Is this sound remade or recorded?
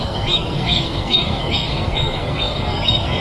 remade